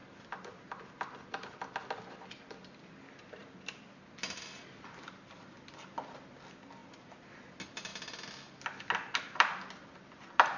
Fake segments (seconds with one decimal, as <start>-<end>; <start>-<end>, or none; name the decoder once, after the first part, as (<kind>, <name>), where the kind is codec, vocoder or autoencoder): none